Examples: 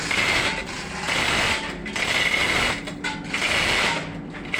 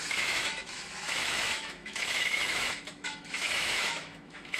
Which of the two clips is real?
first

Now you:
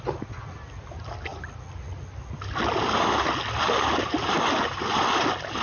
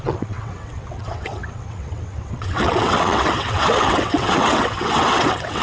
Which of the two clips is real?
first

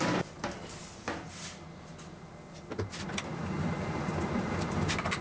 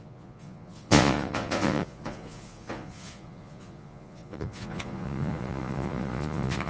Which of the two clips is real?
first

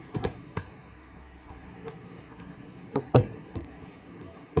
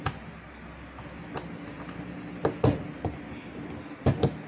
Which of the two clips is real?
second